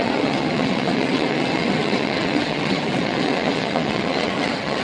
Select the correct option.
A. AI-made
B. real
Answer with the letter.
A